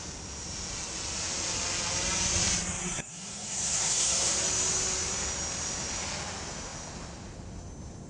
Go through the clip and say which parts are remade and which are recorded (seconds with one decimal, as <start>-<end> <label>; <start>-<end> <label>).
0.0-2.8 recorded; 2.8-4.3 remade; 4.3-8.1 recorded

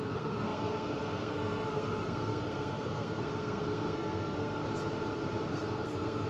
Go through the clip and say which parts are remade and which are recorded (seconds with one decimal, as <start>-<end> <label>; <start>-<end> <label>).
0.0-4.6 remade; 4.6-5.5 recorded; 5.5-6.3 remade

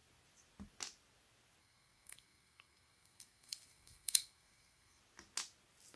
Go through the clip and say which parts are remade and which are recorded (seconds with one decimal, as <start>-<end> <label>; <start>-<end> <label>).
0.0-1.6 recorded; 1.6-5.0 remade; 5.0-6.0 recorded